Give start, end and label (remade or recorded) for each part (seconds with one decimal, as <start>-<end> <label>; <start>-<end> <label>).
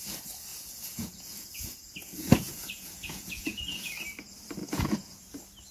0.0-0.5 recorded; 0.5-3.9 remade; 3.9-4.6 recorded; 4.6-5.2 remade; 5.2-5.7 recorded